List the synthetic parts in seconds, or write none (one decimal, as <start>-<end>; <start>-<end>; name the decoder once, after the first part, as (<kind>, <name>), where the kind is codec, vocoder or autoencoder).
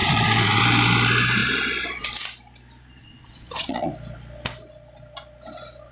0.0-0.6 (vocoder, Vocos); 3.0-3.9